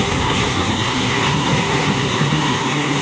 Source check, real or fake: fake